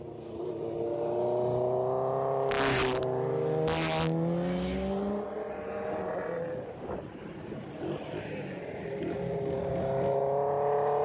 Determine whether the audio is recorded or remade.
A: recorded